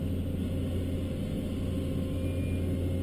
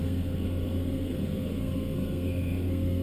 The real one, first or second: first